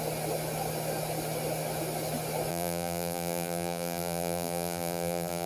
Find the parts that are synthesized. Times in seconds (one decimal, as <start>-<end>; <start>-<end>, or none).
2.5-5.5